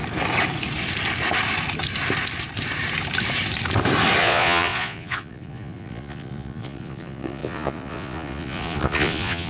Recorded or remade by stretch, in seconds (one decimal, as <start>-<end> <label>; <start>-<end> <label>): 0.0-4.2 recorded; 4.2-9.5 remade